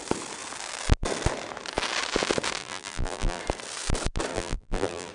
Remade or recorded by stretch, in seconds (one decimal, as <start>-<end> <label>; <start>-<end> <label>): 0.0-2.6 recorded; 2.6-3.4 remade; 3.4-4.3 recorded; 4.3-5.1 remade